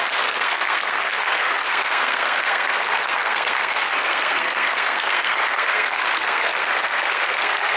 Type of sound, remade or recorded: remade